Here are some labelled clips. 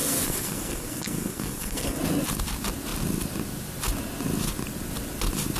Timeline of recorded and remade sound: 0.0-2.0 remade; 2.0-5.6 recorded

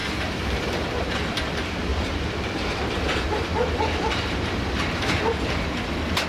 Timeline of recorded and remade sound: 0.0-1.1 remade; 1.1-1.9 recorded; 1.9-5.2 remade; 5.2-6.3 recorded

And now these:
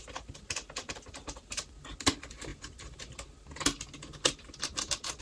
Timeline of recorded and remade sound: 0.0-5.2 recorded

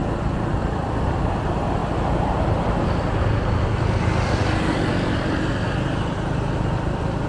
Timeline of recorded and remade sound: 0.0-7.3 recorded